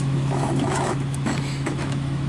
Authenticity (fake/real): fake